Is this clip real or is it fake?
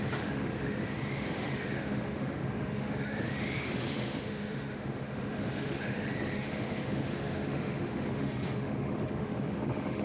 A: fake